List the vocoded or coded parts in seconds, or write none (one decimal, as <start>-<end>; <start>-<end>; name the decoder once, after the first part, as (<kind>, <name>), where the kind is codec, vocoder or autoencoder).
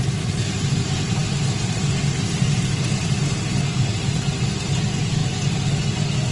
0.0-6.3 (vocoder, BigVGAN v2)